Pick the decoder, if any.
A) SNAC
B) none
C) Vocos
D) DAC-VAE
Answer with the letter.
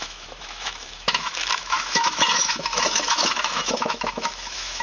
D